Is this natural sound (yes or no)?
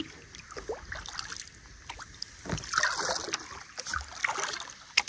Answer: yes